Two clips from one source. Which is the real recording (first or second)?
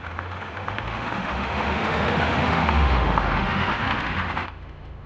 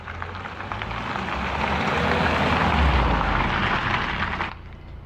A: second